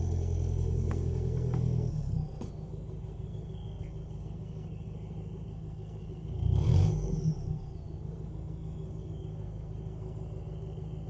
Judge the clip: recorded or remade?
remade